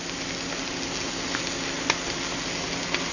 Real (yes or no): yes